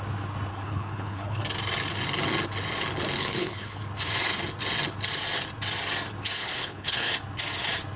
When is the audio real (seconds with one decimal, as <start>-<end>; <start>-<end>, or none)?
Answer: 0.0-0.5; 1.4-3.2; 3.8-6.4; 7.1-8.0